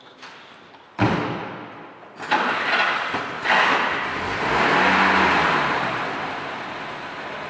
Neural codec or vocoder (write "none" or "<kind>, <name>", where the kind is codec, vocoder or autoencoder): none